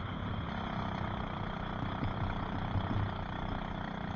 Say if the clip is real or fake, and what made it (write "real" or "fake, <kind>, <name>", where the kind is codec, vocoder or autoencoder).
real